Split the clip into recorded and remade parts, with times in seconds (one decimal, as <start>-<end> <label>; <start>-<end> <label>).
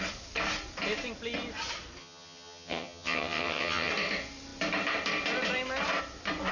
0.0-2.0 recorded; 2.0-3.9 remade; 3.9-6.5 recorded